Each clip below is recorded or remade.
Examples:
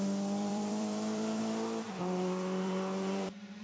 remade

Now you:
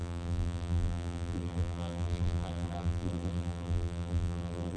remade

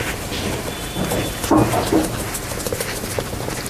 recorded